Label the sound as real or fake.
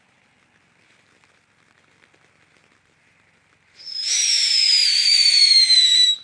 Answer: real